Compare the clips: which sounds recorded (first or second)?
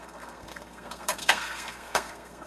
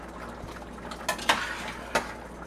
second